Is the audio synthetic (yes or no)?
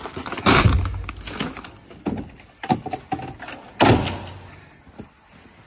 no